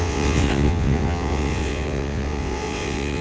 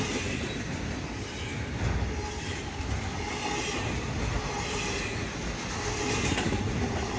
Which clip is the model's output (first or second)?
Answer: first